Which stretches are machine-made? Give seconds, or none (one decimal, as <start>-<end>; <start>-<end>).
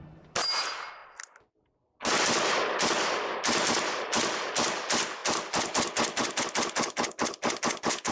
none